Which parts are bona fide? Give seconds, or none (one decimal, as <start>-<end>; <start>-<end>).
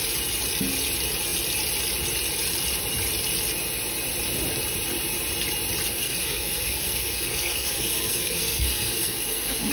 0.0-5.9